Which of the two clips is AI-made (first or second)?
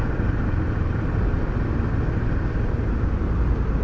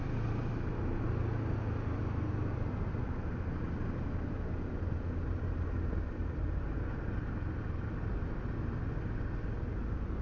first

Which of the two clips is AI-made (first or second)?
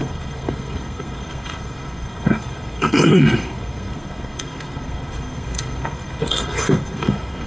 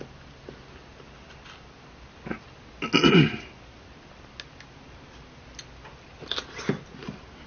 first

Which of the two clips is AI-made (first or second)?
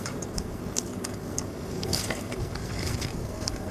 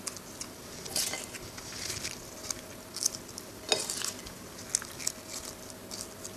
first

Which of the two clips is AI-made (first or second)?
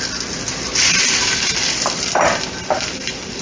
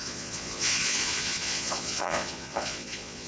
second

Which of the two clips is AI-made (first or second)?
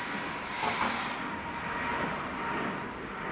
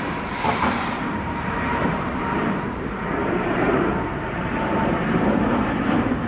second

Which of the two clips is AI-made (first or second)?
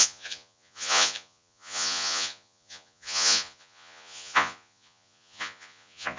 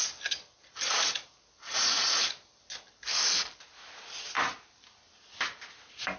first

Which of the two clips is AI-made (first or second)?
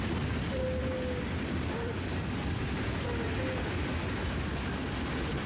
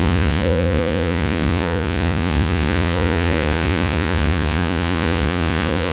second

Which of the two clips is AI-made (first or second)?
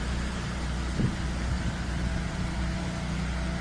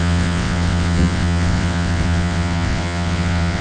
second